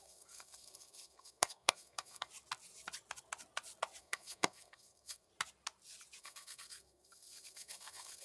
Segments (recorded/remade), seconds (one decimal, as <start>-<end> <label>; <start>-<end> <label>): 0.0-2.3 remade; 2.3-4.0 recorded; 4.0-5.3 remade; 5.3-6.2 recorded; 6.2-8.2 remade